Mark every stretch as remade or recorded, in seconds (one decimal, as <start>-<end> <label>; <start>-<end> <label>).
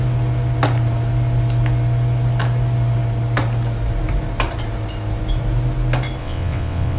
0.0-6.2 recorded; 6.2-7.0 remade